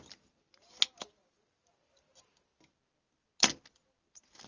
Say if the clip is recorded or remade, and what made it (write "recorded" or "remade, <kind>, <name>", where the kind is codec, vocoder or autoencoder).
recorded